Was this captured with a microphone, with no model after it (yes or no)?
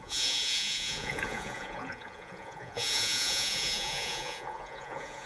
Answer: no